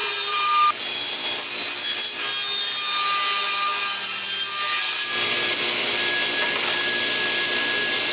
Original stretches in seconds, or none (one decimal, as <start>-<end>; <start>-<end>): 0.0-8.1